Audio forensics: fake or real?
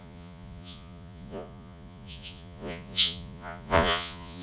fake